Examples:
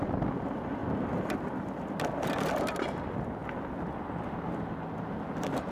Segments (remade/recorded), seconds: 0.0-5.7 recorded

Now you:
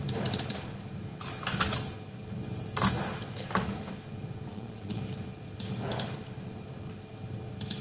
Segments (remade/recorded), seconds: 0.0-4.5 recorded; 4.5-5.0 remade; 5.0-7.8 recorded

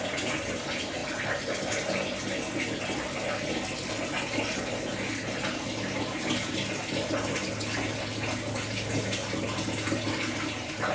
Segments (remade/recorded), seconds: 0.0-10.9 recorded

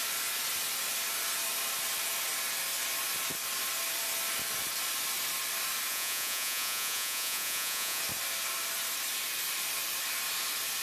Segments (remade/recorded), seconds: 0.0-5.9 recorded; 5.9-8.0 remade; 8.0-10.8 recorded

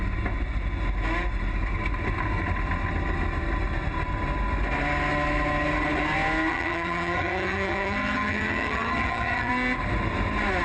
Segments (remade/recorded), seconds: 0.0-6.5 recorded; 6.5-9.5 remade; 9.5-10.6 recorded